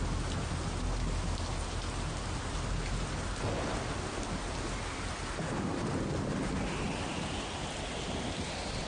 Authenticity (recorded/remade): recorded